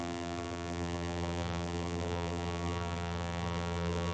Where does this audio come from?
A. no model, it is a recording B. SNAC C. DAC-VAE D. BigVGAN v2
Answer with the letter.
D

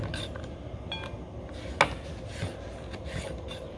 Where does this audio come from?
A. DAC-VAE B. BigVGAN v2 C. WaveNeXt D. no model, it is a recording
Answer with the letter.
D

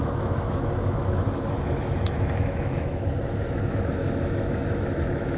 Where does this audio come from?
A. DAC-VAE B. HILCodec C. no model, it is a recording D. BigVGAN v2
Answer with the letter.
A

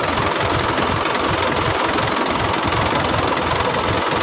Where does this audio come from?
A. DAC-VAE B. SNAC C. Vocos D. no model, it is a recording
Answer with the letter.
D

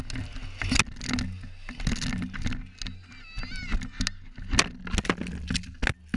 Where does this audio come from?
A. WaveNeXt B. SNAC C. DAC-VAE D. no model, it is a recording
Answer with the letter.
D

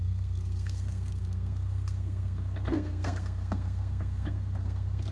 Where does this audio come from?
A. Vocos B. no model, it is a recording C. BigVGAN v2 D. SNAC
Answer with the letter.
D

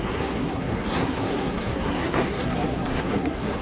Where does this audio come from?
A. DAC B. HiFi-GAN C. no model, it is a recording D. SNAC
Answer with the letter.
D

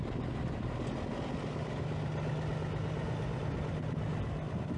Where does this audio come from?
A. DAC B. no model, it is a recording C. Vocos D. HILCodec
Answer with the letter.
B